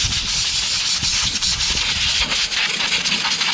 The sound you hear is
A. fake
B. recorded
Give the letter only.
B